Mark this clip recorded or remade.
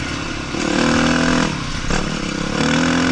recorded